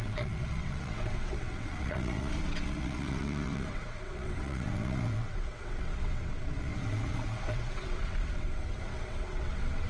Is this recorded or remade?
remade